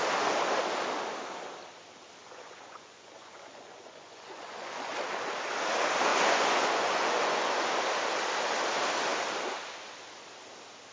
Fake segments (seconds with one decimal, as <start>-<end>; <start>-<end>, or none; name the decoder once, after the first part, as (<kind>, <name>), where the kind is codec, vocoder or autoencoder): 2.2-4.9 (vocoder, Vocos); 6.1-7.7